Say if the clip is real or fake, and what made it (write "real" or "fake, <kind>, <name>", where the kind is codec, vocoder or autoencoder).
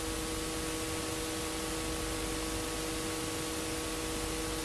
real